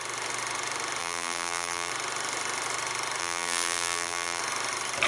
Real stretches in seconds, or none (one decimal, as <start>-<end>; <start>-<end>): 0.0-1.0; 1.9-3.2; 4.4-5.1